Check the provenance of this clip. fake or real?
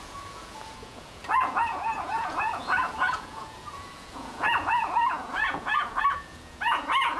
fake